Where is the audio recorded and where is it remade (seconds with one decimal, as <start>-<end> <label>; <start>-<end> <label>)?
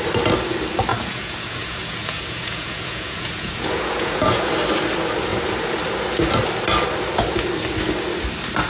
0.0-0.9 recorded; 0.9-4.5 remade; 4.5-8.7 recorded